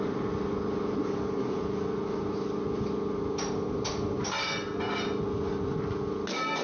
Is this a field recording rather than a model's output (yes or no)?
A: yes